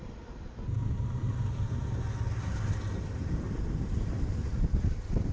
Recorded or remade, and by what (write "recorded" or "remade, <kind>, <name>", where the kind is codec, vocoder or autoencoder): recorded